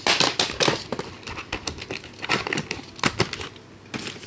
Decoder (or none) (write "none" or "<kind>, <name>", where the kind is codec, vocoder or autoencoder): none